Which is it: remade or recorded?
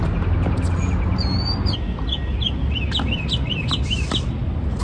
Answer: recorded